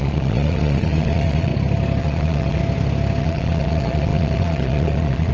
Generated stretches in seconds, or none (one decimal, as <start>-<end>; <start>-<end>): 0.0-1.5; 2.0-2.6; 3.2-5.3